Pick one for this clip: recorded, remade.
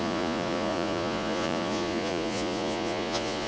remade